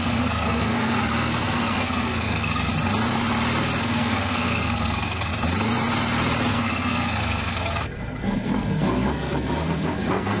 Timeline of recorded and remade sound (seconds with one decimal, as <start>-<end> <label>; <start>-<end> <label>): 0.0-2.7 remade; 2.7-3.8 recorded; 3.8-5.3 remade; 5.3-6.5 recorded; 6.5-10.4 remade